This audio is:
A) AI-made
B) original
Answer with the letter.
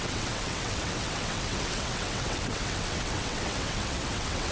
A